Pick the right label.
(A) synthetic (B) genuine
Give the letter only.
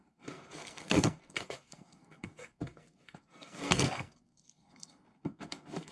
A